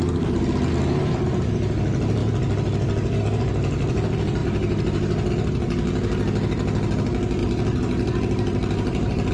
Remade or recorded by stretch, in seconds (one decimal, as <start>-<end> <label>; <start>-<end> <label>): 0.0-4.4 recorded; 4.4-5.3 remade; 5.3-7.4 recorded; 7.4-9.3 remade